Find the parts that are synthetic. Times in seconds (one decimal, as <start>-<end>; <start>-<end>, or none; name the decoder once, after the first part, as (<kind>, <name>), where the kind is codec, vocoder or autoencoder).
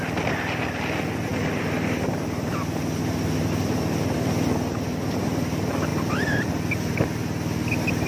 1.3-5.2 (vocoder, BigVGAN v2); 5.9-6.5